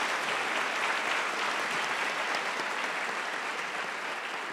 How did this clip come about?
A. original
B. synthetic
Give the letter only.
A